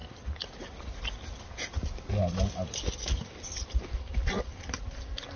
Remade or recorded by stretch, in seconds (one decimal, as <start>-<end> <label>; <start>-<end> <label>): 0.0-5.4 recorded